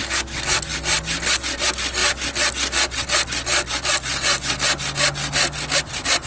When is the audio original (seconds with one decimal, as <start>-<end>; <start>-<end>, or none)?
0.0-6.3

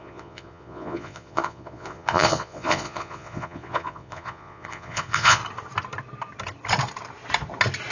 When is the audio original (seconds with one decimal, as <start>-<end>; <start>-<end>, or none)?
5.4-7.9

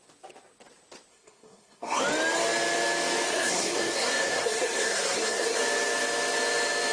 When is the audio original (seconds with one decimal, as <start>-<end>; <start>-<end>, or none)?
0.0-1.1; 2.0-3.3; 5.6-6.9

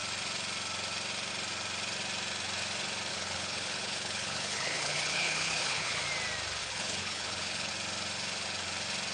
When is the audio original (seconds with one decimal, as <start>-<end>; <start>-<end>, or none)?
0.0-3.1; 6.0-6.6; 7.7-9.1

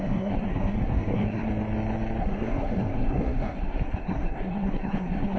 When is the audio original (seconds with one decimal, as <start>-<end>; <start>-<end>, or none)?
1.5-2.2

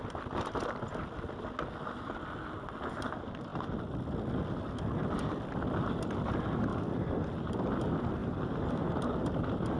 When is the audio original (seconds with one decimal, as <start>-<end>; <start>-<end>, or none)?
0.0-8.2; 8.9-9.8

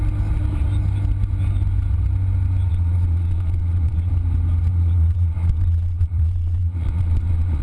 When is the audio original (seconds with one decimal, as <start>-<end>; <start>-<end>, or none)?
0.0-2.7; 4.1-4.7

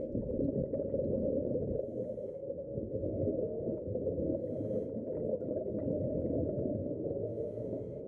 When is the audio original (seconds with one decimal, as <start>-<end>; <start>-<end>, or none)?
0.0-2.2; 4.4-6.8